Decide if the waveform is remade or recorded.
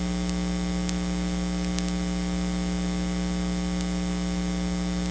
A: recorded